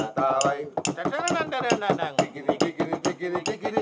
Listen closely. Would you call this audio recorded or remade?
recorded